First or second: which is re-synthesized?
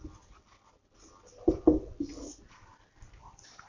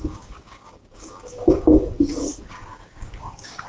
second